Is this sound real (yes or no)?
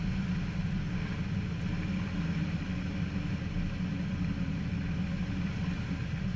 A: yes